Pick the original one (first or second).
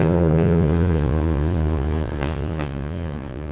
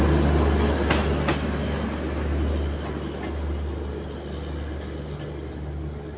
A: second